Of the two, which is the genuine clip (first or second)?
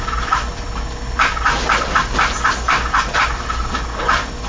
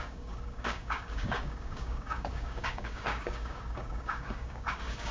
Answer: first